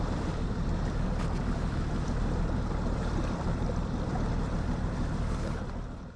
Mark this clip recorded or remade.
remade